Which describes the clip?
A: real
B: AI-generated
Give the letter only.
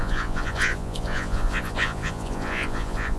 B